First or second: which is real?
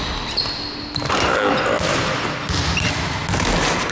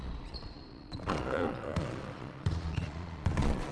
first